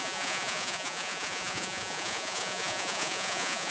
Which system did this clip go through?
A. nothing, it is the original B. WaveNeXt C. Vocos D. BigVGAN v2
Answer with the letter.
C